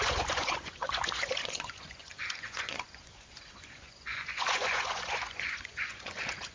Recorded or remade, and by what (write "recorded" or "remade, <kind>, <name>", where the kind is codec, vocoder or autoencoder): remade, vocoder, Vocos